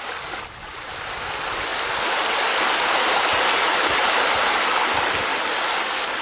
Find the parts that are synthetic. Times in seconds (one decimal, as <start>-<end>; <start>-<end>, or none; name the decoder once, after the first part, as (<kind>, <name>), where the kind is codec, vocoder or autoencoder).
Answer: none